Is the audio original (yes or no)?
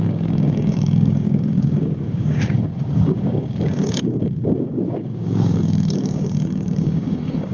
no